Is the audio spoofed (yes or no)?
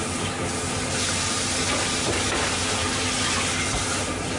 no